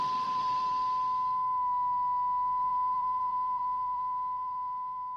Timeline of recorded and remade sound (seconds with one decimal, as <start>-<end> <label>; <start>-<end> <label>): 0.0-0.7 remade; 0.7-2.6 recorded; 2.6-5.2 remade